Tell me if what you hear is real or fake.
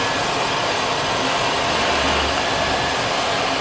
real